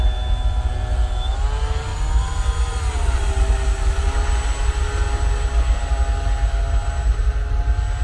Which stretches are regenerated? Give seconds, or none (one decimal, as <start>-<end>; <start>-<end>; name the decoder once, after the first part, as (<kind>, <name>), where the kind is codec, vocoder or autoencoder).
1.9-6.0 (vocoder, BigVGAN v2); 6.8-7.3